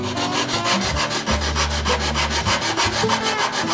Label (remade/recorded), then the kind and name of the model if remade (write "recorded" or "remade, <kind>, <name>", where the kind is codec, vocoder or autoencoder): recorded